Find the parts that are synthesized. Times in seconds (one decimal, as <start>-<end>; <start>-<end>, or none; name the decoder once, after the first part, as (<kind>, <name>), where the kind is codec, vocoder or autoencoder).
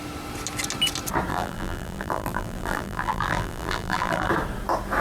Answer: 1.3-4.3 (vocoder, BigVGAN v2)